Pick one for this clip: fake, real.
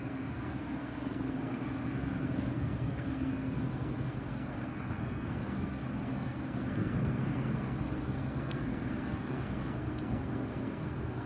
fake